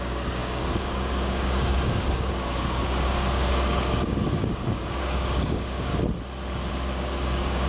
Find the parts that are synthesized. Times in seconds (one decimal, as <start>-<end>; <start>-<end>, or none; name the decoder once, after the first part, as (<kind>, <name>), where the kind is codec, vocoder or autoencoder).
0.0-5.9 (codec, DAC); 6.7-7.7